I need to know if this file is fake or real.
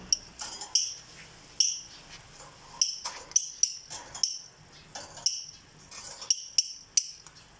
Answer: real